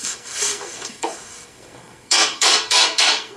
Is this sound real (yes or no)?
no